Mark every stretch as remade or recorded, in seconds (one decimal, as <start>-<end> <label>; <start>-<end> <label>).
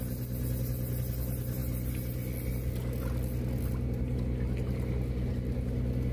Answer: 0.0-6.1 recorded